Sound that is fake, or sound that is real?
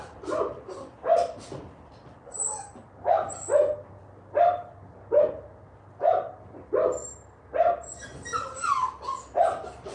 real